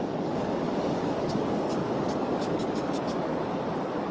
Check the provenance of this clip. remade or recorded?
remade